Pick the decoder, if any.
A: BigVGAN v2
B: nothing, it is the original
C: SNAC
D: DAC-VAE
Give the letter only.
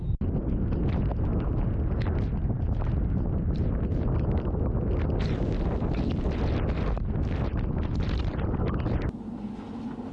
B